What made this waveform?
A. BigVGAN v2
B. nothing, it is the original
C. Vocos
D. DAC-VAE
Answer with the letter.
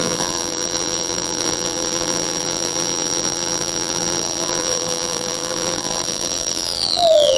A